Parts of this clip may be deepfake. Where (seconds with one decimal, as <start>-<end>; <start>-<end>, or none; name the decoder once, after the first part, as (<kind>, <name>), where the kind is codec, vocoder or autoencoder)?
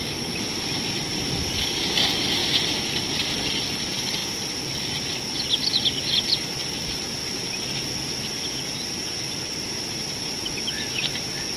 0.0-2.4 (vocoder, BigVGAN v2); 3.2-4.2; 6.8-7.2; 8.7-11.6